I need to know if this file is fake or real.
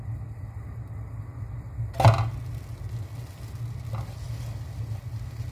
real